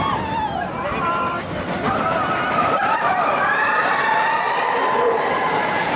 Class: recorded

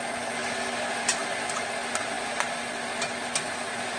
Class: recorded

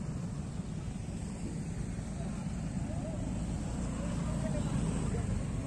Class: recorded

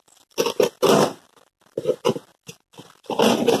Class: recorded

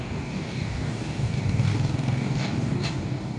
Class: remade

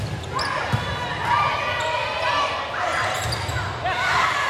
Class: recorded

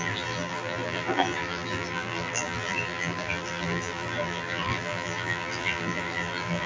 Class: remade